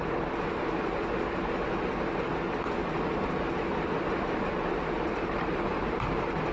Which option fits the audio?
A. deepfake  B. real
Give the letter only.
B